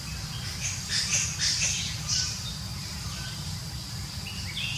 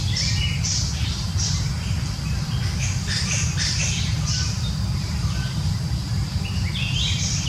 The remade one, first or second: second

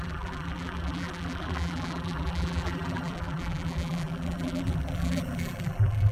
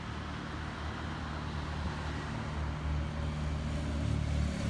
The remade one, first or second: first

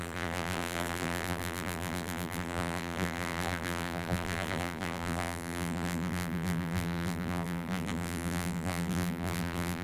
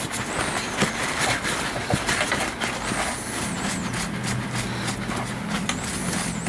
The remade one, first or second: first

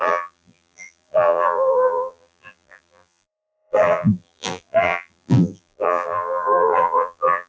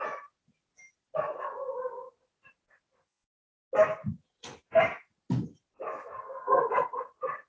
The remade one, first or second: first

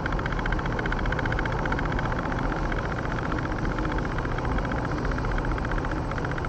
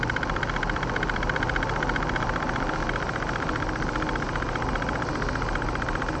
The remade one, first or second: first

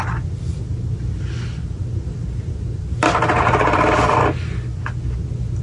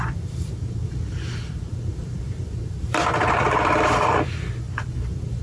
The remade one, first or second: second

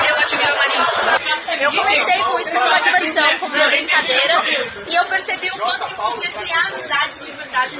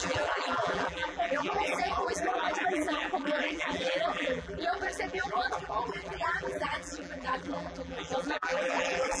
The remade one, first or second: second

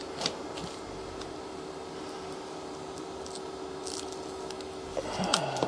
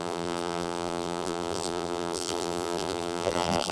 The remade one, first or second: second